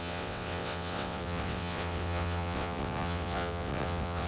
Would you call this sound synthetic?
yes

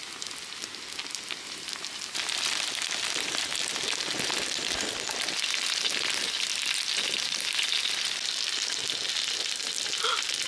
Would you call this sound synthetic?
no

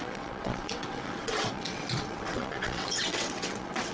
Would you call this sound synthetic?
yes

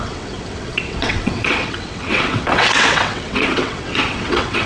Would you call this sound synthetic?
yes